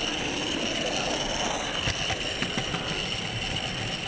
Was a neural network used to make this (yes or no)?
no